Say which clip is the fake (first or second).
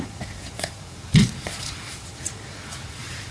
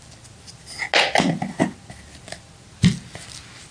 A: first